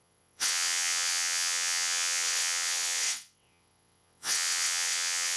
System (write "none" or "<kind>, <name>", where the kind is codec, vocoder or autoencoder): vocoder, WaveNeXt